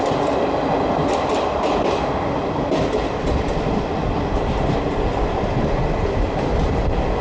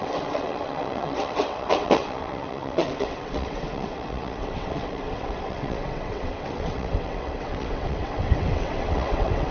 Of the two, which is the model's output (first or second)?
second